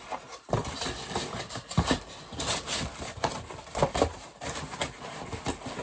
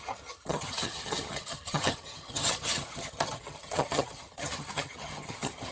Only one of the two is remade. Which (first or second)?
second